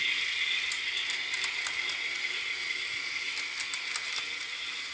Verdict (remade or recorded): recorded